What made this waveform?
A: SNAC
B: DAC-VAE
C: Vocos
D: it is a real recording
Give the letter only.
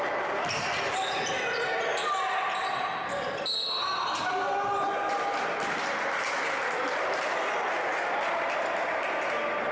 D